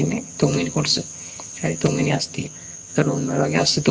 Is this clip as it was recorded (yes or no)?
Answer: no